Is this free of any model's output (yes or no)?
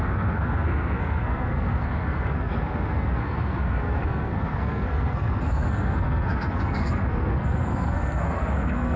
no